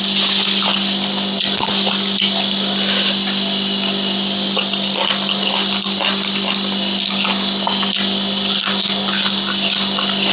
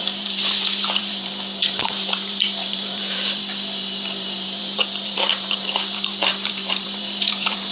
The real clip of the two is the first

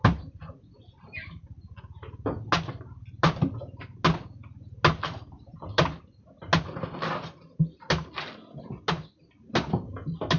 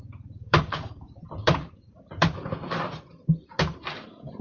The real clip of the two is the first